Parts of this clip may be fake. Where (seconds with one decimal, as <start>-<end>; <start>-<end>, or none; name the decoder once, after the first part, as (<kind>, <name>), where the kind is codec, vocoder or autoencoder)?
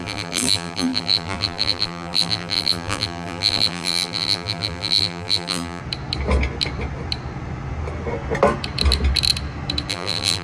0.0-5.8 (vocoder, BigVGAN v2); 9.9-10.4